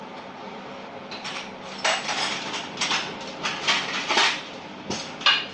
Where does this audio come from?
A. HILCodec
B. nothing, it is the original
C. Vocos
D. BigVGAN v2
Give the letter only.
B